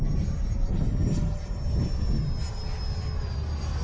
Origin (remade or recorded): recorded